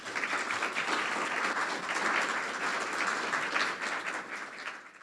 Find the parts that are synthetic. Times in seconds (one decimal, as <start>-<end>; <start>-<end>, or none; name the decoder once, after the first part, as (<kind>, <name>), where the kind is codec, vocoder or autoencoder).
none